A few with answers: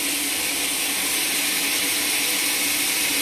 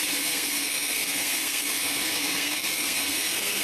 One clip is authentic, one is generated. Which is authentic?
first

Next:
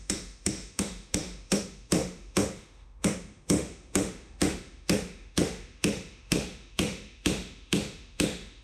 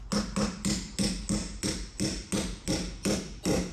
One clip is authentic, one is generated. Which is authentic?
second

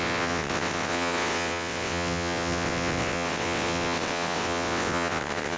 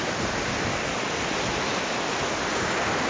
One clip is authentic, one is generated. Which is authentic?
second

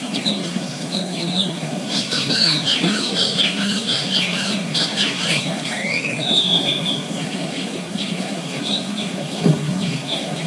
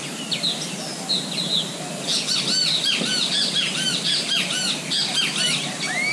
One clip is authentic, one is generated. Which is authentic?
second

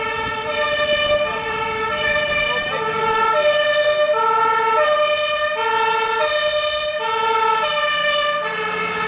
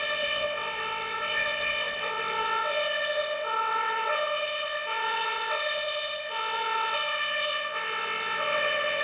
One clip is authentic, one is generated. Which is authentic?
first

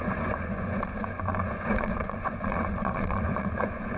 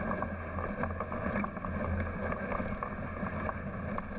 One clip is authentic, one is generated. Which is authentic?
second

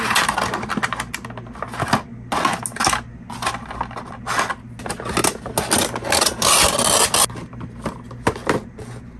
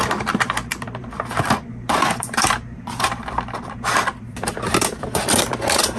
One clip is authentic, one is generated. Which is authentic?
first